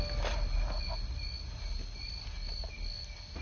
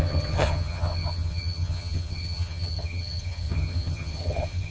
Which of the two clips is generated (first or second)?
second